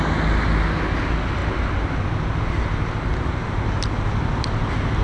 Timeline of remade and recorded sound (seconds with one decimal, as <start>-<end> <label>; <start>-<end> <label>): 0.0-5.0 recorded